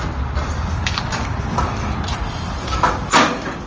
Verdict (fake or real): real